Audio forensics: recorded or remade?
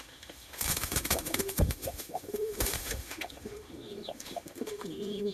remade